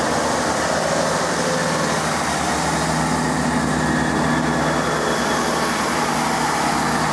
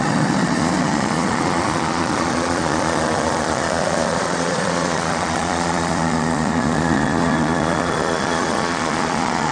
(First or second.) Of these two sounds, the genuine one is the first